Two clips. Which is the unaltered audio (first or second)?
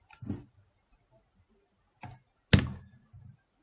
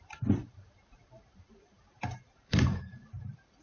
first